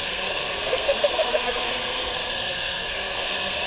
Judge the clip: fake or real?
fake